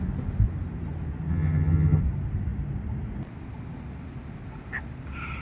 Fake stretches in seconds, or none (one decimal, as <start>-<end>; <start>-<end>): 1.3-2.0